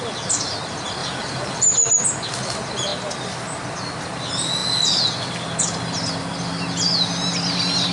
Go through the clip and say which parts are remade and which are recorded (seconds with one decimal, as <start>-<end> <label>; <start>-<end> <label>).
0.0-1.0 recorded; 1.0-1.7 remade; 1.7-7.9 recorded